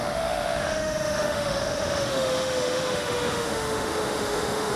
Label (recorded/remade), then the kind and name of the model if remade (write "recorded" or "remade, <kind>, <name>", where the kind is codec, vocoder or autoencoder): remade, autoencoder, DAC-VAE